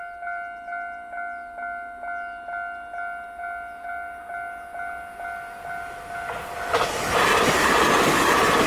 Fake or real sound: real